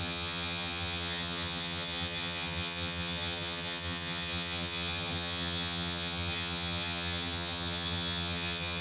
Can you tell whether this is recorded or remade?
remade